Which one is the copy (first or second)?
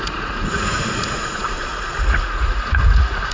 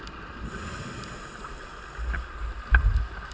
first